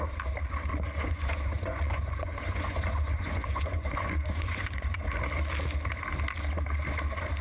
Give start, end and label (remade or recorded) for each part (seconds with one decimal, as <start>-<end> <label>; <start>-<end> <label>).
0.0-0.7 recorded; 0.7-5.1 remade; 5.1-7.4 recorded